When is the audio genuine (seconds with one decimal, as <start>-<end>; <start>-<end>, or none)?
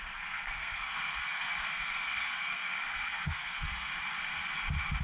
3.9-5.0